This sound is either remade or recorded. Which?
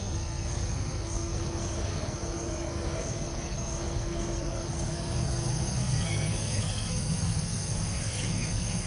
remade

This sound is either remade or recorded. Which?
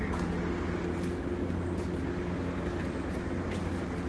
recorded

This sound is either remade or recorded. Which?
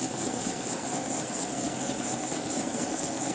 remade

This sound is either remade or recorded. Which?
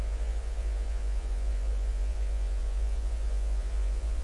remade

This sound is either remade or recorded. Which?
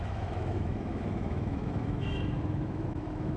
remade